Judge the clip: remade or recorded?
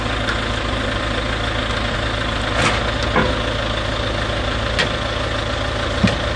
recorded